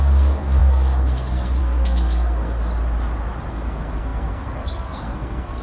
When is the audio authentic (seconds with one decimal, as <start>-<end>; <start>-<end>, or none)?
2.6-3.5